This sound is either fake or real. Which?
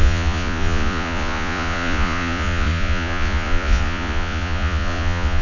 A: fake